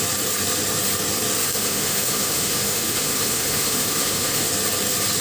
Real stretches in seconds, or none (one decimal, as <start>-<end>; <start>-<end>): 0.0-1.4; 4.5-5.2